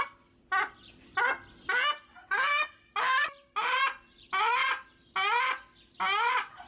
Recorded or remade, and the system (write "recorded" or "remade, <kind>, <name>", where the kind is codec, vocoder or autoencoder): recorded